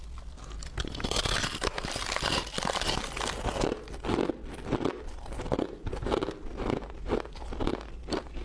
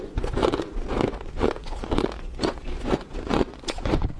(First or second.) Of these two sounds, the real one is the first